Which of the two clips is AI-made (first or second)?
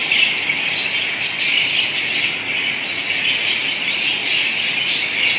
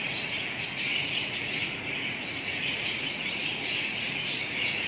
second